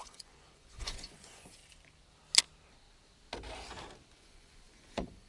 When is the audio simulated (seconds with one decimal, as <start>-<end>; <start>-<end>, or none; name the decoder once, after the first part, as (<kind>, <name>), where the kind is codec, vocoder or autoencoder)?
0.0-1.6 (vocoder, Vocos); 4.2-5.3